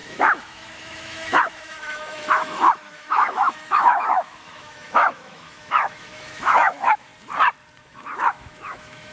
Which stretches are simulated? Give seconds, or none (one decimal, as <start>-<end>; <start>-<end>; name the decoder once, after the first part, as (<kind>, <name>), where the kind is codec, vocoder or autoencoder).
0.0-7.1 (autoencoder, DAC-VAE); 7.8-9.1